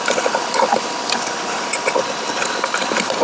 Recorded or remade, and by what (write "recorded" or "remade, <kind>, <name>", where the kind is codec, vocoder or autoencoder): recorded